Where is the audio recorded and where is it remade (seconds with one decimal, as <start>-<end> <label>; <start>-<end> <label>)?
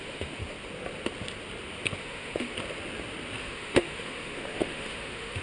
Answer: 0.0-0.4 remade; 0.4-2.0 recorded; 2.0-2.5 remade; 2.5-3.4 recorded; 3.4-5.4 remade